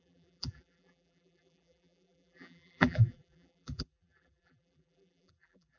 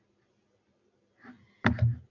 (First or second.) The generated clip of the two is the first